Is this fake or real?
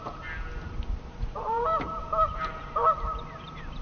fake